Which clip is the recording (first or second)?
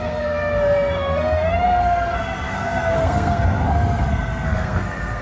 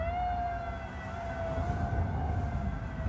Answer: second